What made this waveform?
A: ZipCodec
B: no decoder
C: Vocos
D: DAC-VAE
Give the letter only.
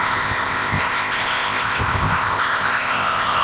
A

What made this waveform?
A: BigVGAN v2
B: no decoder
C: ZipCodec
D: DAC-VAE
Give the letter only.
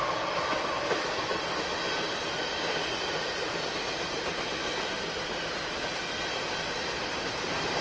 B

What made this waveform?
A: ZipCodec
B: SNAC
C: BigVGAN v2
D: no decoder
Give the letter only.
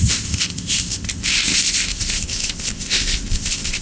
A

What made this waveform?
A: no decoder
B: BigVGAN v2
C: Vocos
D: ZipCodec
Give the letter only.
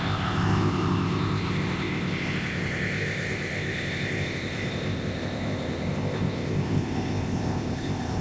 D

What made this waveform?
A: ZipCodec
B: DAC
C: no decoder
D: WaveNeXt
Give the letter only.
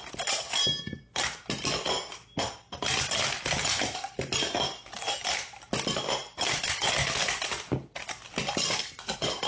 C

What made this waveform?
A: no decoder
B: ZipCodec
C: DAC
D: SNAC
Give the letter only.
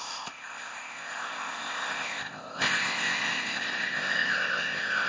B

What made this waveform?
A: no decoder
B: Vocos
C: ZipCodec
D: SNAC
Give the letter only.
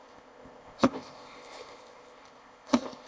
C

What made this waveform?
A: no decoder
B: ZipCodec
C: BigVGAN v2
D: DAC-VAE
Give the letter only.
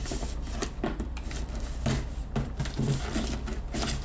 A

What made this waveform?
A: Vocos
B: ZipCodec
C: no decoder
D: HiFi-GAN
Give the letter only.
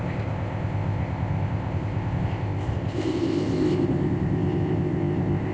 B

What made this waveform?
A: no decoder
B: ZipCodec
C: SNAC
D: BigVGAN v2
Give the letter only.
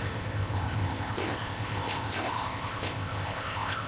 B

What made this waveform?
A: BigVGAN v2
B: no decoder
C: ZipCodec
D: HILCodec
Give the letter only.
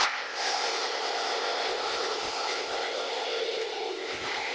C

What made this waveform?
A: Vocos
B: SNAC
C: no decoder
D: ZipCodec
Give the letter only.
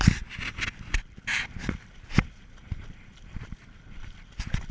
C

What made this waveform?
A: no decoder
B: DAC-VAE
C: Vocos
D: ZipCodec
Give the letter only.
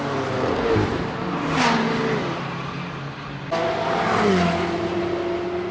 A